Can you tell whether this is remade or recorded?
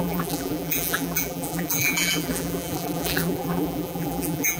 remade